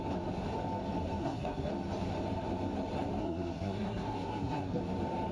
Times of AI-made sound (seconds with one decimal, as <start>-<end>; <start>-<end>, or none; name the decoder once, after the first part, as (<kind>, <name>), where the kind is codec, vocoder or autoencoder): 1.2-1.7 (codec, SNAC); 3.2-4.8